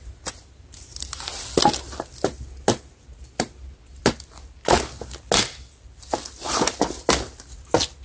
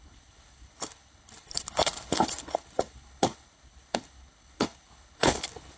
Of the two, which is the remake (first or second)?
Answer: second